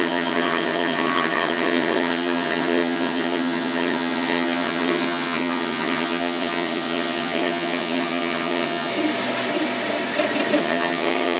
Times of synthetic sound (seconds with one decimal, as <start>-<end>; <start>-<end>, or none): 0.0-8.9; 10.6-11.4